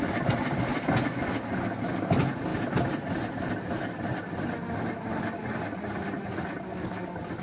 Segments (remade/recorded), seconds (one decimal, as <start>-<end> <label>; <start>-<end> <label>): 0.0-6.7 recorded; 6.7-7.4 remade